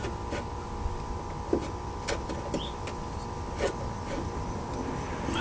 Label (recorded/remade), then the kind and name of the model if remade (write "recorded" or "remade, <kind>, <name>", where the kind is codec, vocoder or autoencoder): recorded